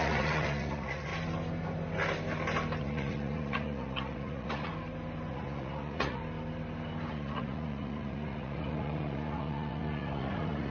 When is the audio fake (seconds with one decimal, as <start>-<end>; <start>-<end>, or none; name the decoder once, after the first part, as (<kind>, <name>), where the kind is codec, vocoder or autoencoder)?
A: 0.0-1.1 (vocoder, Vocos); 2.8-4.7; 5.3-6.2; 7.1-10.7